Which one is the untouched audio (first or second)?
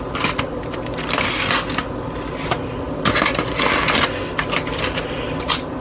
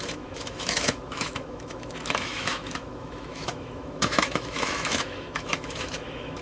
first